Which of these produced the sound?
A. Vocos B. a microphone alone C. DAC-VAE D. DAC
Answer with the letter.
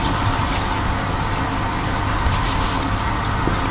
B